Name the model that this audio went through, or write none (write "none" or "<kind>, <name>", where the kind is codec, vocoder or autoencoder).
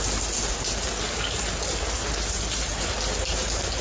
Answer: none